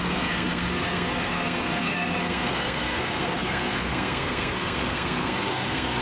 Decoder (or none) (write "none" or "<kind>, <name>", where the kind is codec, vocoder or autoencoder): codec, SNAC